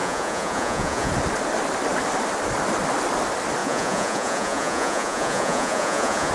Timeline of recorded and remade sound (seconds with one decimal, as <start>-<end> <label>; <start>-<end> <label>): 0.0-1.1 remade; 1.1-3.6 recorded; 3.6-6.3 remade